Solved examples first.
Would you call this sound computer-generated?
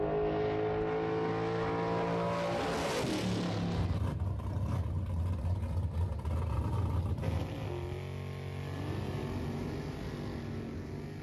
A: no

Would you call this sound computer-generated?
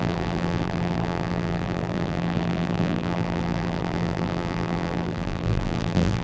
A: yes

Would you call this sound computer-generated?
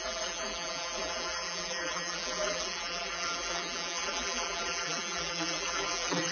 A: yes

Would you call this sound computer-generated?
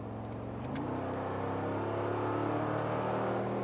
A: no